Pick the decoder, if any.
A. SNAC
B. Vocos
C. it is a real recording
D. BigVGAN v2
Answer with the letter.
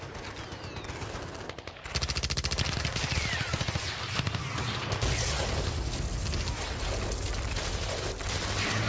C